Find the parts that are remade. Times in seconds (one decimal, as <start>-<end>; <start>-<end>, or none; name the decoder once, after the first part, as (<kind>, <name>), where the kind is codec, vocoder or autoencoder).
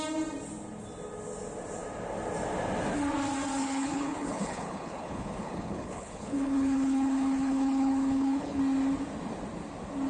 3.6-8.6 (codec, HILCodec)